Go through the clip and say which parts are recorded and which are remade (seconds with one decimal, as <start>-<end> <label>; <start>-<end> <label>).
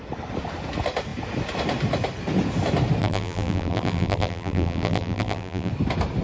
0.0-3.0 recorded; 3.0-5.7 remade; 5.7-6.2 recorded